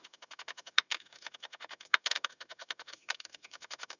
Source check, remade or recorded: remade